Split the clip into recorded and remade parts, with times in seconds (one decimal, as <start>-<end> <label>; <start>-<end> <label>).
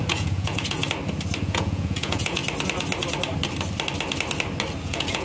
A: 0.0-0.8 remade; 0.8-1.4 recorded; 1.4-2.4 remade; 2.4-4.8 recorded; 4.8-5.2 remade